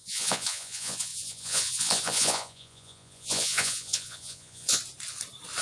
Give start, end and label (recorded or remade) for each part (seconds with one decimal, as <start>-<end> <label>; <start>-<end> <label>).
0.0-4.8 remade; 4.8-5.6 recorded